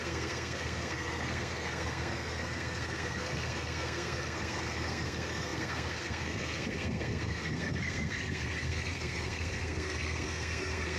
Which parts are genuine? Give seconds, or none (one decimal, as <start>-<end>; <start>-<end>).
none

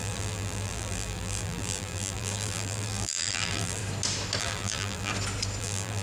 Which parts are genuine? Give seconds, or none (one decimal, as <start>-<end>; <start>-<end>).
3.8-4.4; 5.1-5.6

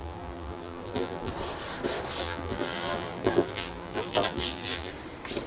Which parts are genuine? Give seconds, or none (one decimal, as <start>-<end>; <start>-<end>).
1.3-2.2; 4.9-5.5

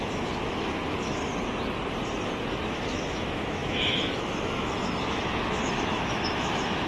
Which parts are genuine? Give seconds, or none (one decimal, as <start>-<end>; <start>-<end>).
1.2-2.5

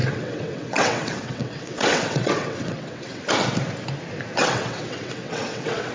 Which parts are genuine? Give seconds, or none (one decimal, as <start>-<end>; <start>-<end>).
3.3-4.3

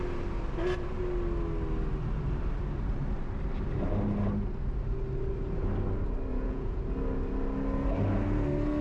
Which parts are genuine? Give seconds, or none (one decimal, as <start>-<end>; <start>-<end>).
0.0-6.3; 6.8-8.8

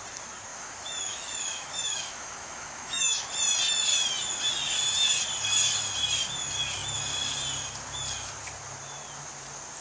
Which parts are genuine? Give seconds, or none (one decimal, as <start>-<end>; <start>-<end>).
0.0-0.5; 3.3-9.8

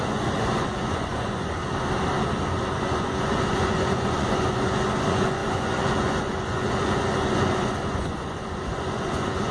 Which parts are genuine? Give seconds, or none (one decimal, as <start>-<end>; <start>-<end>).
1.6-2.6